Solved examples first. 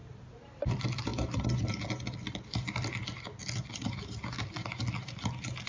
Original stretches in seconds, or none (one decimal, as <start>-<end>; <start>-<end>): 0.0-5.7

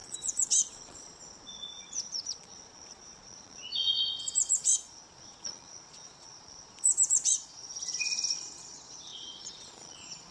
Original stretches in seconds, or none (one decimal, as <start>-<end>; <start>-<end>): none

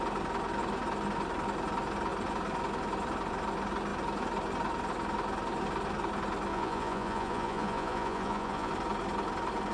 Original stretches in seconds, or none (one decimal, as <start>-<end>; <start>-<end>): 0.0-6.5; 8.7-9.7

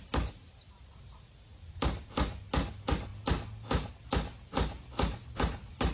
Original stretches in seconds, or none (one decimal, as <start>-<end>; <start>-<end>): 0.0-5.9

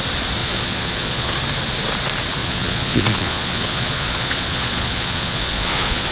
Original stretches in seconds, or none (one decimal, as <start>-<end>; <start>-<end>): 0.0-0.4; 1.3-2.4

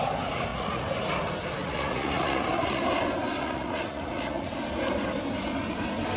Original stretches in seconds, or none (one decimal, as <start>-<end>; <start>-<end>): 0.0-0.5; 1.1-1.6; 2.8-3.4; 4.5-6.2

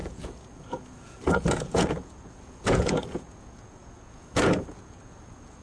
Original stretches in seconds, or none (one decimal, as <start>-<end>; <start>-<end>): none

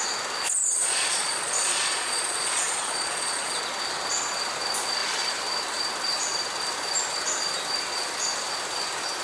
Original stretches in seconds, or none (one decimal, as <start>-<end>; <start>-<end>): 0.0-0.6; 3.6-9.2